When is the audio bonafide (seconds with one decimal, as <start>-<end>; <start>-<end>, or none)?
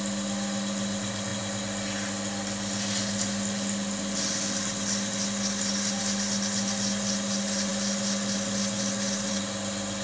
0.0-10.0